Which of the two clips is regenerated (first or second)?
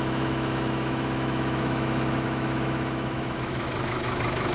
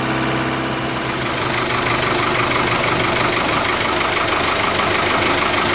first